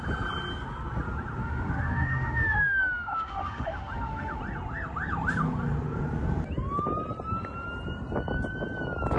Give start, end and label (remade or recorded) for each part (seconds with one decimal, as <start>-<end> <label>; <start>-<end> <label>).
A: 0.0-1.4 recorded; 1.4-4.4 remade; 4.4-9.2 recorded